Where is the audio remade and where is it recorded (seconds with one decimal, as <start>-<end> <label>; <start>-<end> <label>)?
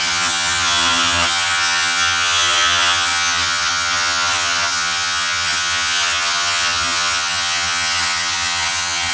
0.0-9.1 remade